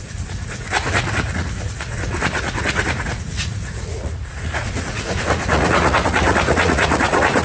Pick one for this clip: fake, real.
fake